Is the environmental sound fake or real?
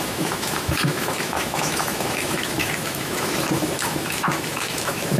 fake